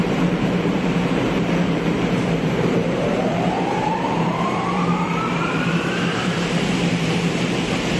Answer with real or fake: fake